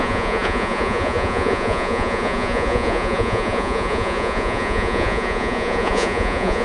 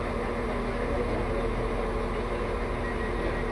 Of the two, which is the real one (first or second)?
second